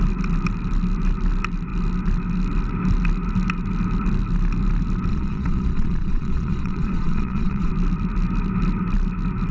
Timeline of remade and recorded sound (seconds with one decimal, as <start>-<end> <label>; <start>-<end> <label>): 0.0-5.1 recorded; 5.1-7.7 remade; 7.7-9.5 recorded